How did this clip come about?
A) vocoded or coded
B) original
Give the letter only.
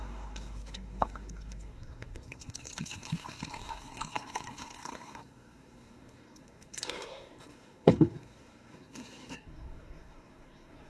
A